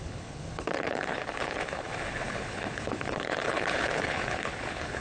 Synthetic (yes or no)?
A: yes